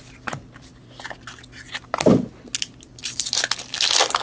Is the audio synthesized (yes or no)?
no